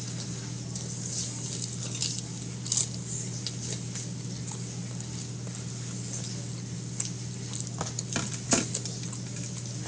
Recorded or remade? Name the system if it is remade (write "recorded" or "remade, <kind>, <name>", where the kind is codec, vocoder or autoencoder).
recorded